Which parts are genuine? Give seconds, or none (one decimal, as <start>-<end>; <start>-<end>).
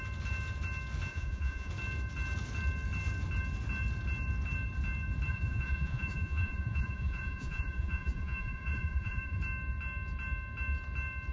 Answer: 0.0-1.1; 1.7-5.3; 9.4-11.3